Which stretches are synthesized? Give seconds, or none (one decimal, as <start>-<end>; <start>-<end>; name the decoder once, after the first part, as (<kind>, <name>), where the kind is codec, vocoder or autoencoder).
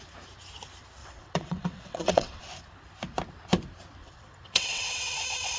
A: 1.0-2.4 (vocoder, WaveNeXt); 4.0-5.6